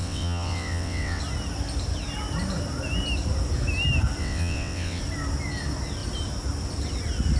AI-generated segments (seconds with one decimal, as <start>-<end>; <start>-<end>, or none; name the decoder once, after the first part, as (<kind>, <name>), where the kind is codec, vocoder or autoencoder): 0.0-1.2 (vocoder, WaveNeXt); 4.2-5.0